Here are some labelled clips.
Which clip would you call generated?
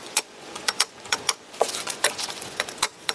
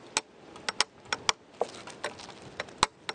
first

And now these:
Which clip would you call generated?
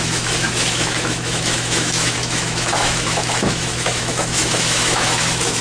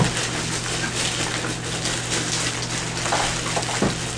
first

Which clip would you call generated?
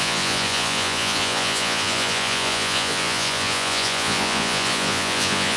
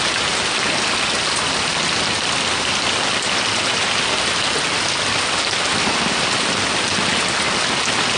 first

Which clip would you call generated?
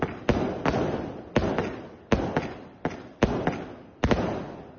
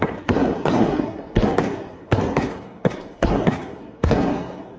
second